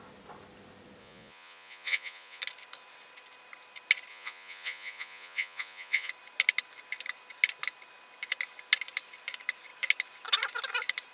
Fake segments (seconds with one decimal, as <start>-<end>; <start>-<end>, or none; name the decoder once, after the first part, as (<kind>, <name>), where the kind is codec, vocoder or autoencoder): 1.0-2.4 (vocoder, Vocos); 4.1-6.1